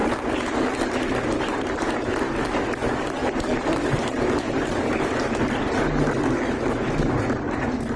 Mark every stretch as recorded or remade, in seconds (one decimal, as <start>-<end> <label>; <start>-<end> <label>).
0.0-3.2 recorded; 3.2-5.4 remade; 5.4-8.0 recorded